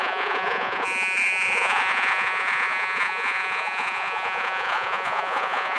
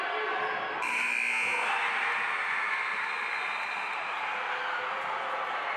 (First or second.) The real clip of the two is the second